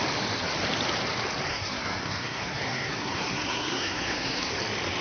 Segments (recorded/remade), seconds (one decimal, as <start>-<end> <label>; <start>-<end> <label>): 0.0-1.5 recorded; 1.5-4.5 remade; 4.5-5.0 recorded